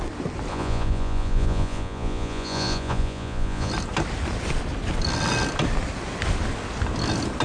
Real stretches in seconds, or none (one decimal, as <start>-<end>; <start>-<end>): 0.0-0.5; 3.7-7.4